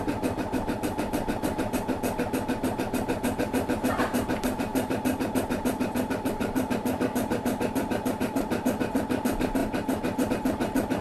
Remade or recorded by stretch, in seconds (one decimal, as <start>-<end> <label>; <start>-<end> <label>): 0.0-9.6 remade; 9.6-10.3 recorded; 10.3-11.0 remade